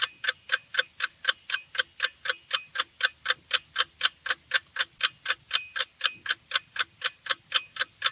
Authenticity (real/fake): real